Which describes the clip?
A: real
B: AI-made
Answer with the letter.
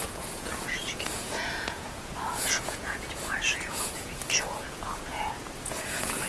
B